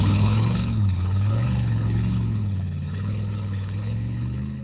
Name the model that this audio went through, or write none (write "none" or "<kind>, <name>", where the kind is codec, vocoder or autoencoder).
codec, HILCodec